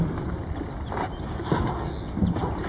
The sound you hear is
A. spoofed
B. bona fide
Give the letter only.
B